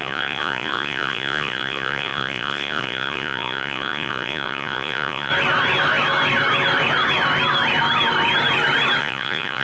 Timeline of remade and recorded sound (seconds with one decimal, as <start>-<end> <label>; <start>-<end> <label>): 0.0-5.3 remade; 5.3-9.0 recorded; 9.0-9.6 remade